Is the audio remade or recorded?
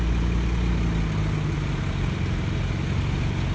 recorded